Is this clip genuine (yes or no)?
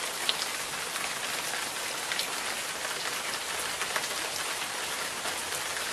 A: yes